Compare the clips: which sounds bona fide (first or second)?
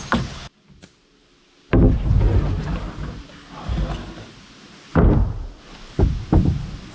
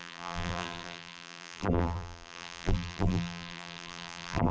first